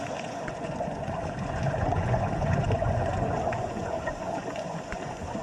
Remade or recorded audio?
remade